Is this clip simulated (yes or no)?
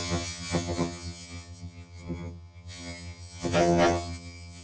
yes